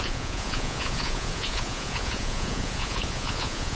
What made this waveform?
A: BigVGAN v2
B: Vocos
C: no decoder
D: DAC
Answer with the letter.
B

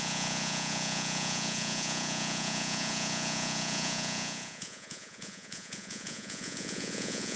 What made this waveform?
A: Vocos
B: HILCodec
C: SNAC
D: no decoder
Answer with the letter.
A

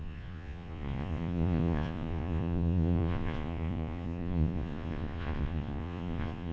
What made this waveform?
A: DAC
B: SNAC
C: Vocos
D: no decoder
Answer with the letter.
C